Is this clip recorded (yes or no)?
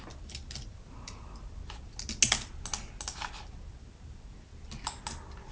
yes